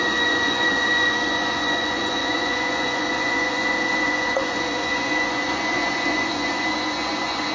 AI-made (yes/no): yes